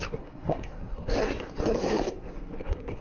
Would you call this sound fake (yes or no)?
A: yes